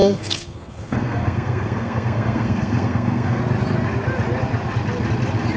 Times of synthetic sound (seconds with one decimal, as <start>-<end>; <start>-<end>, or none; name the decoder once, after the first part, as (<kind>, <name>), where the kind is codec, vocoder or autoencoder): 0.0-3.4 (codec, SNAC)